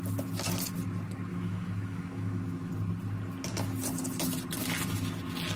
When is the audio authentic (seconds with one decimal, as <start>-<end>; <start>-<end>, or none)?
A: 0.0-1.3; 2.7-5.6

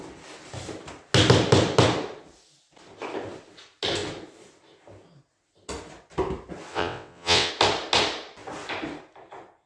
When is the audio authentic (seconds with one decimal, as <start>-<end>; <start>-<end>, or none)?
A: 0.0-6.7; 7.5-9.7

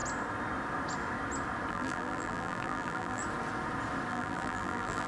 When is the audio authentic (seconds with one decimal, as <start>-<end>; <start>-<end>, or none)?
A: 0.0-1.7; 3.2-4.1

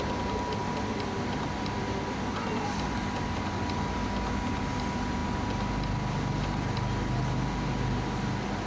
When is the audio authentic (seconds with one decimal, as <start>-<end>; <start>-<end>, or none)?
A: 0.0-8.7